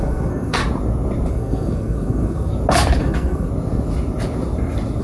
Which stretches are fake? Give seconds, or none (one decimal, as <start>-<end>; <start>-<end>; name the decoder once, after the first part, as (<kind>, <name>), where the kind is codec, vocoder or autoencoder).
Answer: 0.0-0.6 (codec, SNAC); 1.3-2.5; 3.0-3.5

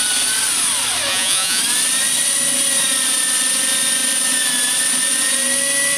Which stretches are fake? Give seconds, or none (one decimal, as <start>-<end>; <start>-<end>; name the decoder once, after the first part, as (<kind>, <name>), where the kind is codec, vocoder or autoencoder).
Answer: 1.1-1.6 (vocoder, Vocos)

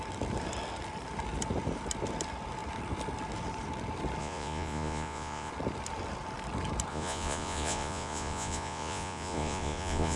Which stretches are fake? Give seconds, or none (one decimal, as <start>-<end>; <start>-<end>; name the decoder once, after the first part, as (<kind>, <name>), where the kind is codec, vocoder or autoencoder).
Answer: 4.2-5.5 (vocoder, Vocos); 6.9-10.2

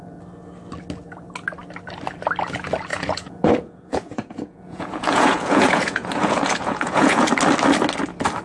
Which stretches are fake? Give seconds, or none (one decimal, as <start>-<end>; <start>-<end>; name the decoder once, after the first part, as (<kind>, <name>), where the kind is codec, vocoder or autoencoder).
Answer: 2.9-7.3 (vocoder, Vocos)

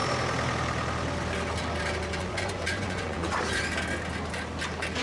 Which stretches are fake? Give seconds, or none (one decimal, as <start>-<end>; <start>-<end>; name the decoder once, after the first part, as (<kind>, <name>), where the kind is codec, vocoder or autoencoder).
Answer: 2.2-3.4 (vocoder, Vocos)

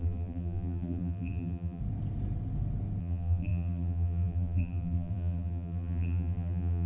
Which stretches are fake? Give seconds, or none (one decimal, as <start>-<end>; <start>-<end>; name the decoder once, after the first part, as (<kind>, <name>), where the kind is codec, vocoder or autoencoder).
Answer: 0.0-1.8 (vocoder, BigVGAN v2); 3.0-6.9

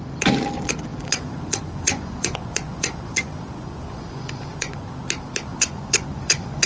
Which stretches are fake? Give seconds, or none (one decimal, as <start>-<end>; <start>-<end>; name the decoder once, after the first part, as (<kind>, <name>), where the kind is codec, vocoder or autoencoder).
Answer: 0.9-4.9 (vocoder, Vocos); 5.5-6.7